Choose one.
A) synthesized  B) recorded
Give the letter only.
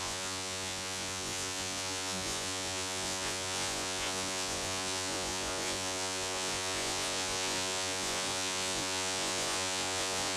A